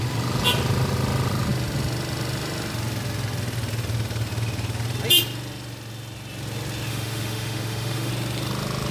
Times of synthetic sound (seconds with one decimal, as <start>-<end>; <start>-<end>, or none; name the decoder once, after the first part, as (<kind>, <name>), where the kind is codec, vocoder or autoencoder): 6.9-8.1 (autoencoder, DAC-VAE)

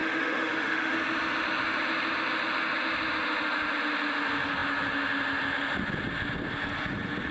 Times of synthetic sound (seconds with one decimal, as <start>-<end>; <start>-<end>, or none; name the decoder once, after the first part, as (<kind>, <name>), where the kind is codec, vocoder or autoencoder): 0.0-0.9 (autoencoder, DAC-VAE)

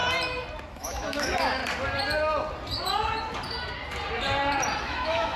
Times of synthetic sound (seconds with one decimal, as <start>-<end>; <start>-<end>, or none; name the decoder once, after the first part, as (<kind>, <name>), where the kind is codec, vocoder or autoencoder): 0.7-1.6 (autoencoder, DAC-VAE); 4.8-5.4

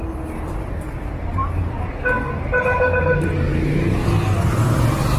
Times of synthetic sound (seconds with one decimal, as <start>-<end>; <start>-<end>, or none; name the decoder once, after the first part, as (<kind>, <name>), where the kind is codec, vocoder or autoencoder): none

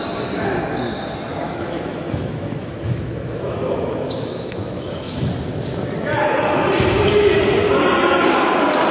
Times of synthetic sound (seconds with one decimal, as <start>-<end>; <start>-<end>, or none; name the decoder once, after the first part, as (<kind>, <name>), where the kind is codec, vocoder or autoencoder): 1.4-5.3 (autoencoder, DAC-VAE)